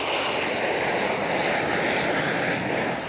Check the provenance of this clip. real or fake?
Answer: real